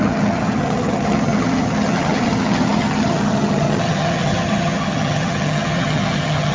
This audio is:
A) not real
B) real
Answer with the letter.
A